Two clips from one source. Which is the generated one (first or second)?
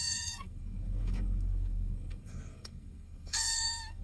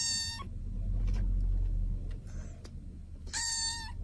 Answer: first